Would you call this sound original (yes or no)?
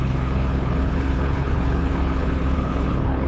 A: no